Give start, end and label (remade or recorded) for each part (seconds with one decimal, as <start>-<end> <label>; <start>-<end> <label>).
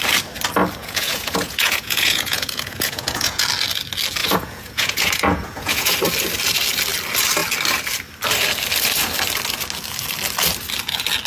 0.0-0.8 recorded; 0.8-3.4 remade; 3.4-4.2 recorded; 4.2-5.9 remade; 5.9-11.3 recorded